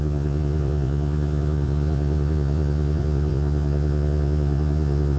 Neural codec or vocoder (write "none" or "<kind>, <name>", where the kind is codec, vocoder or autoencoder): vocoder, Vocos